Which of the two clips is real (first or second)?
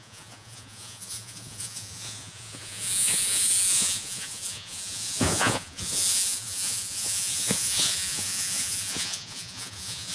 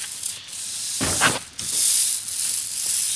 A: second